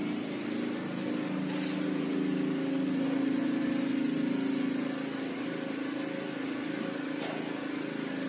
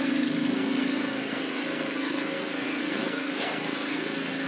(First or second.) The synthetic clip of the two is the second